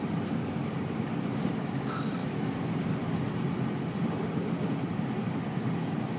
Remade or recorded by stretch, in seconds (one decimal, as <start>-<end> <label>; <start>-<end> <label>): 0.0-6.2 remade